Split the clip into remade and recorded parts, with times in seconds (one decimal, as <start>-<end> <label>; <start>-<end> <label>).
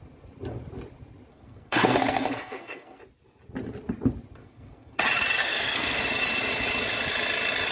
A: 0.0-1.3 recorded; 1.3-3.0 remade; 3.0-4.4 recorded; 4.4-5.0 remade; 5.0-5.4 recorded; 5.4-6.0 remade; 6.0-7.7 recorded